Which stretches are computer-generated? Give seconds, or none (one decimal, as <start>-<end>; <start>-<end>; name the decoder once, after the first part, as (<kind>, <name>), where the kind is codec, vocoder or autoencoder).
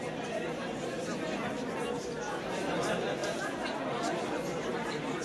none